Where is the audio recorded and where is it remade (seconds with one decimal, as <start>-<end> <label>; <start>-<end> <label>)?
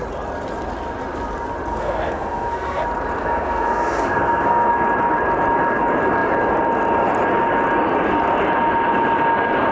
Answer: 0.0-1.7 recorded; 1.7-2.8 remade; 2.8-3.2 recorded; 3.2-4.7 remade; 4.7-9.7 recorded